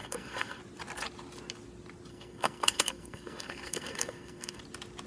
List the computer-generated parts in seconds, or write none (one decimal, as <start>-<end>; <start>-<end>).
0.0-0.6; 2.1-4.6